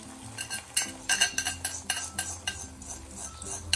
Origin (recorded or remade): recorded